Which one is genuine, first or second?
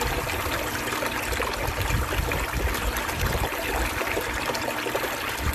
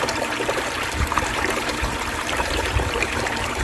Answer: first